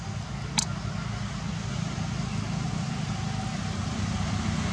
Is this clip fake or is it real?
real